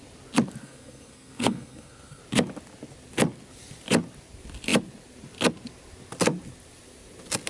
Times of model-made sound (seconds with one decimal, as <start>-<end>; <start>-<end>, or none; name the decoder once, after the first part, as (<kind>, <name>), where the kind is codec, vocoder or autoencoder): 0.6-2.2 (codec, SNAC)